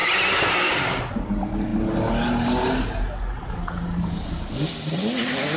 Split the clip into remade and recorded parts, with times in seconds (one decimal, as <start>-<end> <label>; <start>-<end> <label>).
0.0-5.6 recorded